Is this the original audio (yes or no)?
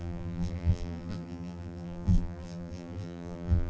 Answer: no